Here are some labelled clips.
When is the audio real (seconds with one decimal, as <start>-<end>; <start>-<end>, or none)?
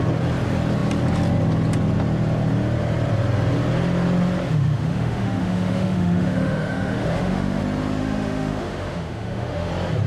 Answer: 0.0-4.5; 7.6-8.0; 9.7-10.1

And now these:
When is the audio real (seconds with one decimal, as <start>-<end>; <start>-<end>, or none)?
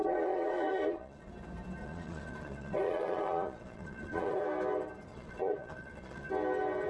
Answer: 1.3-1.8; 4.4-5.1; 6.3-6.9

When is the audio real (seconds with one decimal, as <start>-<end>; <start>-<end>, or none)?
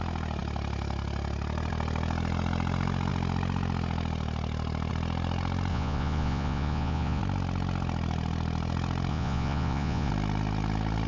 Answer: 0.0-5.7; 7.2-9.1; 10.1-11.1